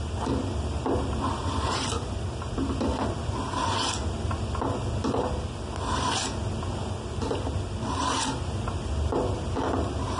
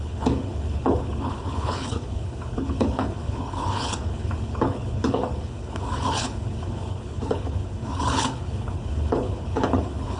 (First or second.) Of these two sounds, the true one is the first